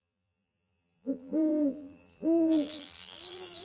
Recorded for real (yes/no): no